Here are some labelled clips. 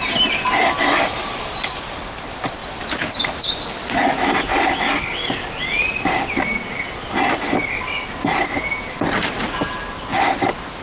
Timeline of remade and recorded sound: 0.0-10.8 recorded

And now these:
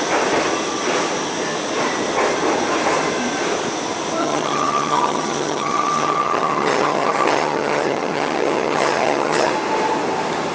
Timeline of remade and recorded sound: 0.0-4.2 recorded; 4.2-9.5 remade; 9.5-10.5 recorded

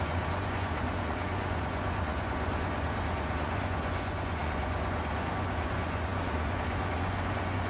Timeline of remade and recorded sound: 0.0-7.7 remade

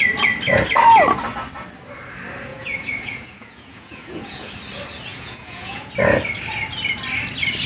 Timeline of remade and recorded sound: 0.0-2.5 recorded; 2.5-4.5 remade; 4.5-5.1 recorded; 5.1-5.9 remade; 5.9-7.7 recorded